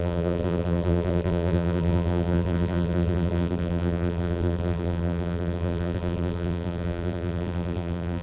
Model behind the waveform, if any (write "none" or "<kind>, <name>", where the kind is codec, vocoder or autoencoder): vocoder, BigVGAN v2